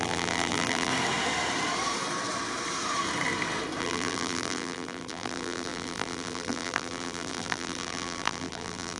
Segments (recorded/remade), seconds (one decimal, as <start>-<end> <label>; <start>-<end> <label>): 0.0-0.9 remade; 0.9-3.8 recorded; 3.8-9.0 remade